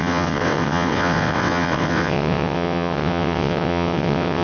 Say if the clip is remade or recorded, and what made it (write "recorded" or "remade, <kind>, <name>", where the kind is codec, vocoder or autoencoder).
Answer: remade, vocoder, WaveNeXt